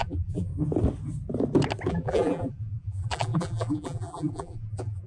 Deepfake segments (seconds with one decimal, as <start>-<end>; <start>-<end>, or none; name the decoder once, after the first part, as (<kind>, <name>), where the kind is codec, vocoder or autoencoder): 0.0-0.5 (vocoder, BigVGAN v2); 1.9-5.1

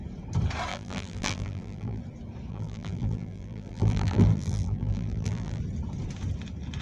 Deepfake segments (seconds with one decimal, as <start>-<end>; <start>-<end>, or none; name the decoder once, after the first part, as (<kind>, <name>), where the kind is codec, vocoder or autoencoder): 0.7-2.0 (vocoder, BigVGAN v2); 2.5-5.6

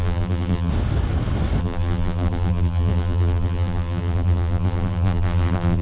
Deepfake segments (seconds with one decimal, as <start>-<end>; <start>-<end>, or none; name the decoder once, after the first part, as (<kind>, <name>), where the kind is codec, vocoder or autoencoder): 0.0-0.7 (vocoder, BigVGAN v2); 1.6-5.8

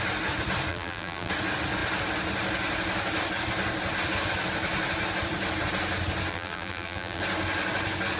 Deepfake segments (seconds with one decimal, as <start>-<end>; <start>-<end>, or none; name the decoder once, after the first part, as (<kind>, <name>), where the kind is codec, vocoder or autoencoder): 0.7-1.3 (vocoder, BigVGAN v2); 6.3-7.2

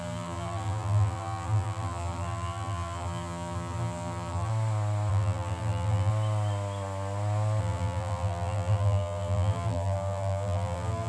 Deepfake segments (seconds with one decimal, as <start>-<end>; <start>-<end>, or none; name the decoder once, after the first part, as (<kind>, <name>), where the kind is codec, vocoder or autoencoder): 0.0-4.5 (vocoder, BigVGAN v2); 5.1-6.1; 7.6-11.1